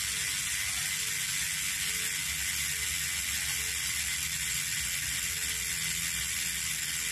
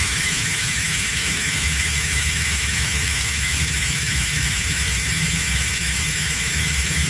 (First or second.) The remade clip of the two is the second